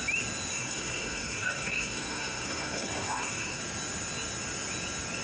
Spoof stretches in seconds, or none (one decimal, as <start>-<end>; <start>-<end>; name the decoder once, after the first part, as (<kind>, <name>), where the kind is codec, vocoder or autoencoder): 0.5-3.6 (codec, SNAC)